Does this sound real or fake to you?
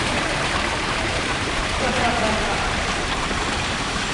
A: fake